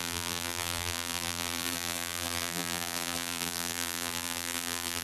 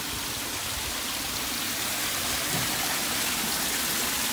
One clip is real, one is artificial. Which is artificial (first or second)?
first